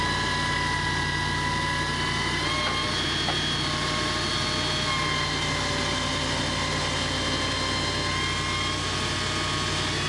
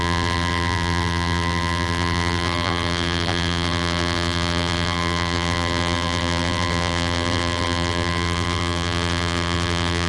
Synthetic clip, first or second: second